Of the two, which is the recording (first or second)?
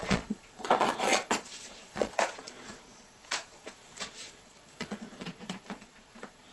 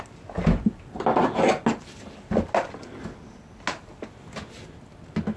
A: second